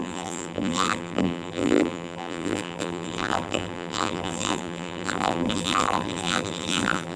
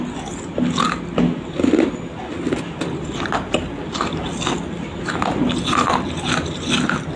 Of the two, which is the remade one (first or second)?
first